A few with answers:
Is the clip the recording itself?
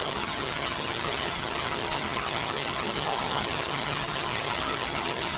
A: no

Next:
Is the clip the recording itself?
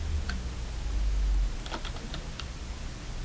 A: yes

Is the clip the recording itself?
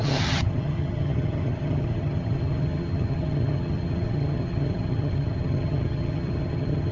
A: no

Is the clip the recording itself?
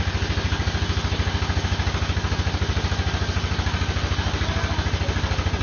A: yes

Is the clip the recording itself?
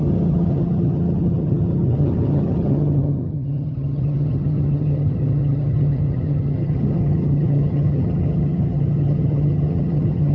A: no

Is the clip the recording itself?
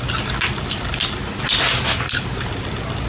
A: yes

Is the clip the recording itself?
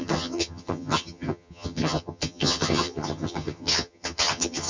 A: no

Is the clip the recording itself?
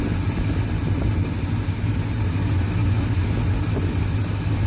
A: yes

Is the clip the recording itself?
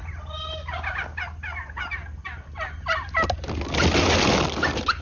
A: yes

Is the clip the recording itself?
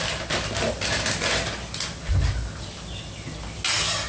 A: yes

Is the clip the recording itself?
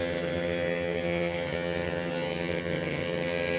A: no